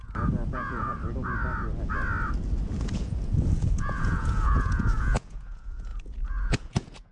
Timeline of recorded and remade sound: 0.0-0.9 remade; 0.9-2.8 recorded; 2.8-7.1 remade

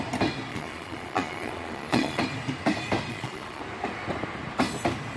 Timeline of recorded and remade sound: 0.0-0.5 recorded; 0.5-2.2 remade; 2.2-3.1 recorded; 3.1-3.6 remade; 3.6-5.2 recorded

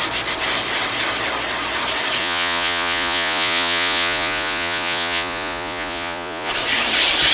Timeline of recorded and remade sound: 0.0-2.2 recorded; 2.2-6.5 remade; 6.5-7.3 recorded

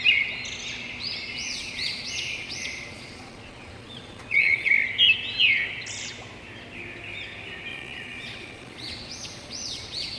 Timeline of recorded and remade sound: 0.0-1.3 recorded; 1.3-4.7 remade; 4.7-7.7 recorded; 7.7-10.2 remade

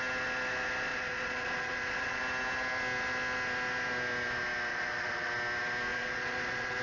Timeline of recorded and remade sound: 0.0-0.9 recorded; 0.9-2.2 remade; 2.2-4.7 recorded; 4.7-5.3 remade; 5.3-5.9 recorded; 5.9-6.8 remade

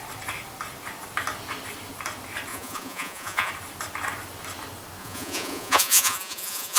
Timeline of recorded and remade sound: 0.0-2.5 recorded; 2.5-3.5 remade; 3.5-5.0 recorded; 5.0-6.8 remade

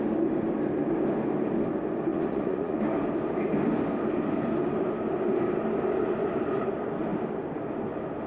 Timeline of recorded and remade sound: 0.0-2.1 recorded; 2.1-2.8 remade; 2.8-8.3 recorded

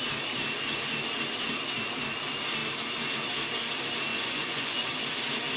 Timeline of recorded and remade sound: 0.0-4.1 recorded; 4.1-4.9 remade; 4.9-5.6 recorded